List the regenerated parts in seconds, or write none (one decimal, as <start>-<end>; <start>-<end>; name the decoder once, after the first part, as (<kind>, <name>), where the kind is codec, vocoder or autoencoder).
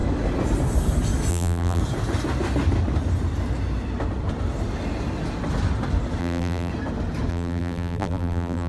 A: 1.3-1.8 (vocoder, BigVGAN v2); 6.2-6.7; 7.3-8.7